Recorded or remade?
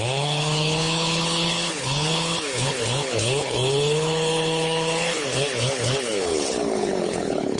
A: remade